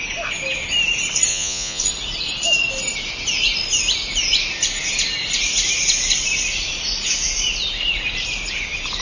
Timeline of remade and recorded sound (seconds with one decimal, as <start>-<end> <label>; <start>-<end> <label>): 0.0-1.3 recorded; 1.3-1.8 remade; 1.8-9.0 recorded

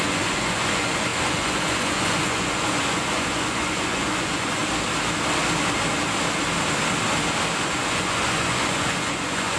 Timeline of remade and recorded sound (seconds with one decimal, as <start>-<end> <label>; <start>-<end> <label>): 0.0-4.6 remade; 4.6-7.6 recorded; 7.6-9.6 remade

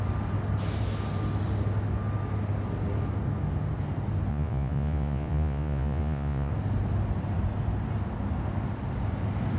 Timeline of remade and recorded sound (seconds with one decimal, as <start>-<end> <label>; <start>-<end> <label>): 0.0-4.3 recorded; 4.3-6.5 remade; 6.5-9.6 recorded

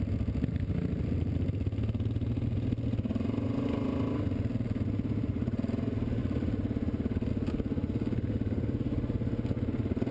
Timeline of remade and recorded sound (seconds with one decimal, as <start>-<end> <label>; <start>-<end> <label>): 0.0-10.1 recorded

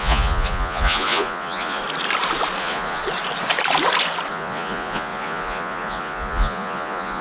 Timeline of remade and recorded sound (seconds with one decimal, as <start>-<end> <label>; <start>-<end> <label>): 0.0-1.8 remade; 1.8-2.6 recorded; 2.6-3.0 remade; 3.0-4.3 recorded; 4.3-7.2 remade